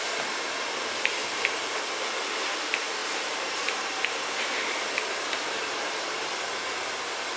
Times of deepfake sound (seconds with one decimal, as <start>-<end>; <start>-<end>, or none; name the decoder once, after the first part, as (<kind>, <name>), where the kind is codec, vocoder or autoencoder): 1.2-1.8 (vocoder, BigVGAN v2); 3.0-6.4